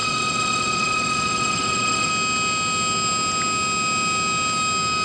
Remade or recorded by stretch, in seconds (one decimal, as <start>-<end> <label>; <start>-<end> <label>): 0.0-2.1 remade; 2.1-5.0 recorded